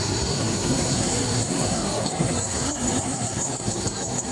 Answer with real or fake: fake